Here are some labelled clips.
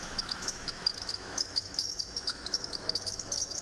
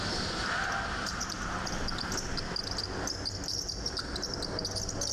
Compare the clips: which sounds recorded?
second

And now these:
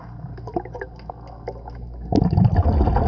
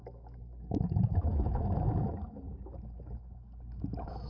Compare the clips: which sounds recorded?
first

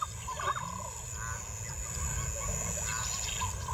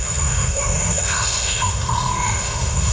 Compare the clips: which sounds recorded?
first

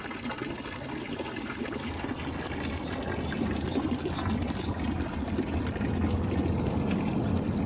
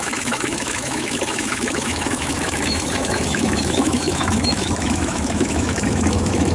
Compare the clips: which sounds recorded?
first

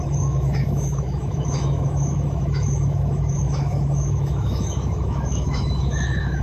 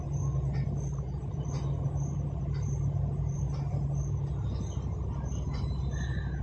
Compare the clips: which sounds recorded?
second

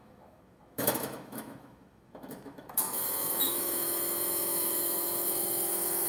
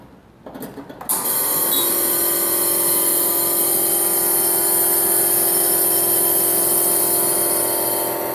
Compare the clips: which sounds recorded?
second